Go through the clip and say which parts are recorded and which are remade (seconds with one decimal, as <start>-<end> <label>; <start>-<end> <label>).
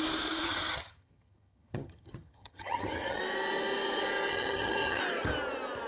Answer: 0.0-0.4 recorded; 0.4-3.2 remade; 3.2-4.3 recorded; 4.3-5.0 remade; 5.0-5.9 recorded